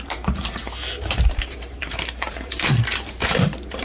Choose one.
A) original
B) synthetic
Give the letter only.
B